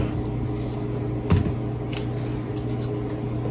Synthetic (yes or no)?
no